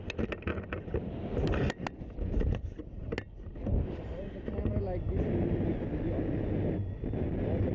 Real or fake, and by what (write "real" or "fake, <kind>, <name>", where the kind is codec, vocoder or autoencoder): real